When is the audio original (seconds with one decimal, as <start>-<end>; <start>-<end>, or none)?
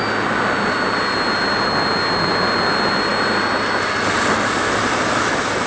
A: 0.0-5.7